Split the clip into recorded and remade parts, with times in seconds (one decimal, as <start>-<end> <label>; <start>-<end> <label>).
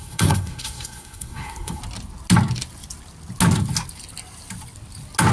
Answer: 0.0-1.8 remade; 1.8-5.3 recorded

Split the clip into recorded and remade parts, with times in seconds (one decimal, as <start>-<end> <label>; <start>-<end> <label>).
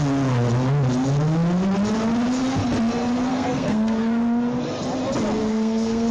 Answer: 0.0-3.3 recorded; 3.3-4.0 remade; 4.0-5.4 recorded; 5.4-6.1 remade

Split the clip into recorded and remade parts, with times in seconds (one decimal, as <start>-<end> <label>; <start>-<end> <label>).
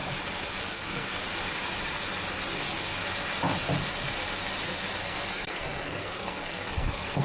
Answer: 0.0-0.6 recorded; 0.6-1.2 remade; 1.2-5.0 recorded; 5.0-7.2 remade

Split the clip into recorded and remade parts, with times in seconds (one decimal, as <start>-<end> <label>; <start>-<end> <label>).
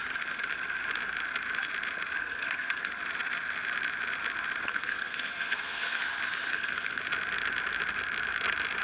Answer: 0.0-2.2 recorded; 2.2-2.9 remade; 2.9-4.7 recorded; 4.7-6.0 remade; 6.0-6.5 recorded; 6.5-7.0 remade; 7.0-8.8 recorded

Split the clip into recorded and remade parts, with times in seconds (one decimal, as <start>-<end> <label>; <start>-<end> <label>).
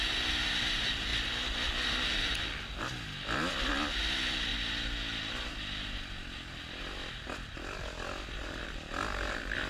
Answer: 0.0-9.7 recorded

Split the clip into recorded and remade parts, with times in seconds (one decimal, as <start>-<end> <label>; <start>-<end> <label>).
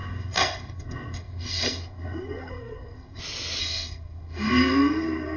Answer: 0.0-3.2 remade; 3.2-3.6 recorded; 3.6-5.4 remade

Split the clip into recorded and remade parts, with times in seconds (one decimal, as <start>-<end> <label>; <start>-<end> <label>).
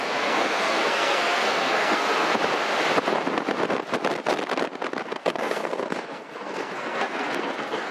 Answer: 0.0-2.3 remade; 2.3-5.0 recorded; 5.0-7.9 remade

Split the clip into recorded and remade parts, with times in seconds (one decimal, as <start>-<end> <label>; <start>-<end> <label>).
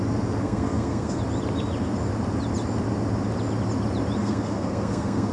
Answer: 0.0-0.4 recorded; 0.4-1.2 remade; 1.2-4.2 recorded; 4.2-5.3 remade